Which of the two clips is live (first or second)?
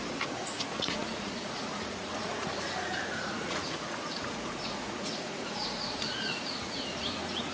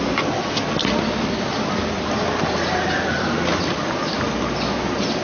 second